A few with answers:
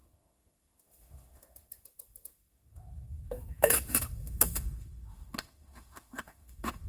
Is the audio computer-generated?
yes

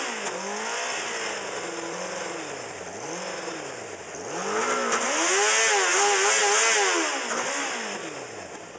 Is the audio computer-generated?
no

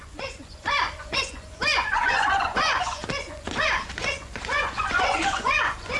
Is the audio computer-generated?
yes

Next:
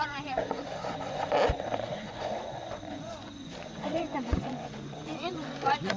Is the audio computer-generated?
yes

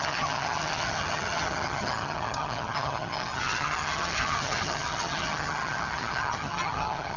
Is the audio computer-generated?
yes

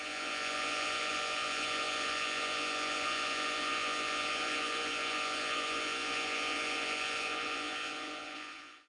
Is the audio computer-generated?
yes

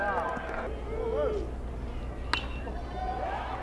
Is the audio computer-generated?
no